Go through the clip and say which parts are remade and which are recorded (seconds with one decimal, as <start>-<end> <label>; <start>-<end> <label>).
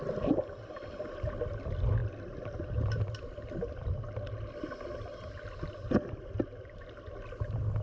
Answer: 0.0-7.8 recorded